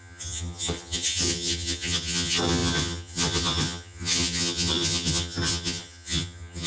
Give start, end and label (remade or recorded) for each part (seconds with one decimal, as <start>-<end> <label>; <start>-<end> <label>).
0.0-6.7 remade